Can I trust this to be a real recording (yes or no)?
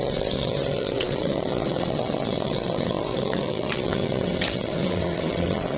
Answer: no